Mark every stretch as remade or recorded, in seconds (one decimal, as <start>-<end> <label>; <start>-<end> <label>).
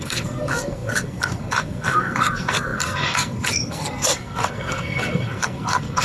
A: 0.0-6.0 remade